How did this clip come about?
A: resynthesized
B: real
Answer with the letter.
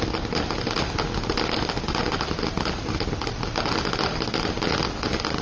B